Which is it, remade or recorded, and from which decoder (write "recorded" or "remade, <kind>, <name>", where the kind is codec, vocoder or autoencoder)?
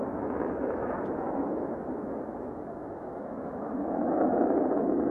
remade, autoencoder, DAC-VAE